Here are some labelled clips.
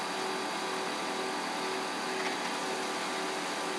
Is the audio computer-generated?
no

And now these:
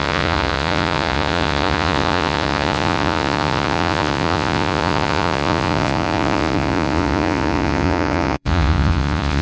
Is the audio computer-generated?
yes